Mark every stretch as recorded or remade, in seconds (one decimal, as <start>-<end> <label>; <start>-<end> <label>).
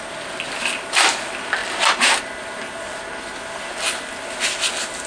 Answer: 0.0-5.1 recorded